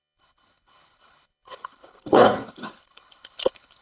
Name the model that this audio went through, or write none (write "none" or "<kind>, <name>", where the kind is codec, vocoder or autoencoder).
codec, HILCodec